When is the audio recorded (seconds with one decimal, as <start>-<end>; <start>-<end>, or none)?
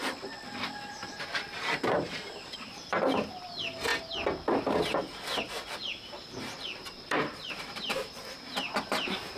0.0-1.0; 2.9-5.8